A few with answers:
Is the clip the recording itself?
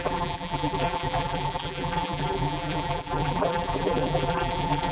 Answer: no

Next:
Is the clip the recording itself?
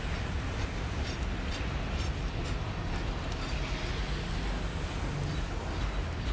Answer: yes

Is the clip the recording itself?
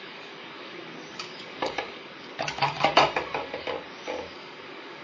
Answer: no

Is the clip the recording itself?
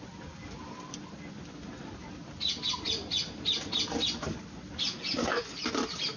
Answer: yes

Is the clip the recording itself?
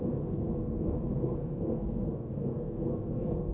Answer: no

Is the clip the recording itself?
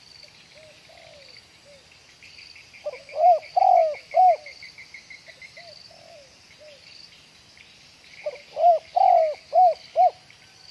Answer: yes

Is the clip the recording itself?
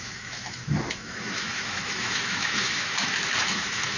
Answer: no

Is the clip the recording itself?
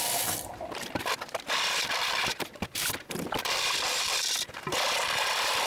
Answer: no